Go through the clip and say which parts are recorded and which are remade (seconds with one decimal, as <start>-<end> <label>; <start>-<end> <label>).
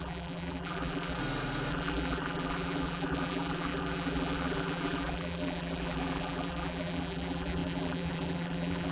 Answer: 0.0-1.2 remade; 1.2-1.7 recorded; 1.7-8.9 remade